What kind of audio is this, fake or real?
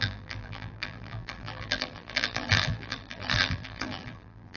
fake